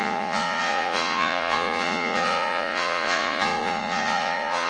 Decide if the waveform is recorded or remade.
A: remade